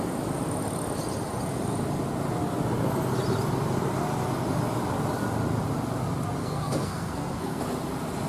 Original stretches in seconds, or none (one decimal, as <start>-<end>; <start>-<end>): 0.0-6.4; 7.6-8.3